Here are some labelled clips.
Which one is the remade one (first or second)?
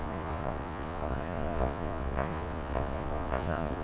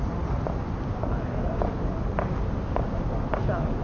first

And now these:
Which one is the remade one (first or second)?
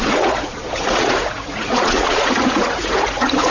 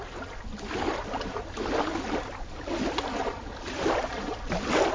first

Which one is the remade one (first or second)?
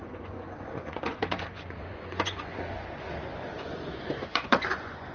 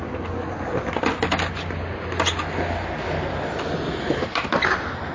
first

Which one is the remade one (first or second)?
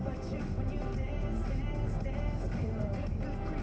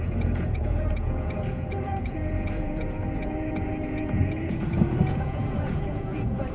second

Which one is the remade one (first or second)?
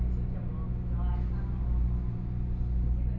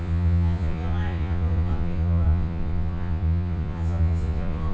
second